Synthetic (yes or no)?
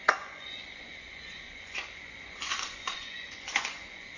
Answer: yes